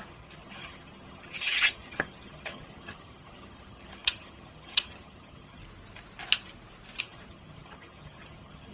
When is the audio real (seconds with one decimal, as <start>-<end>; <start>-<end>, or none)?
5.6-7.0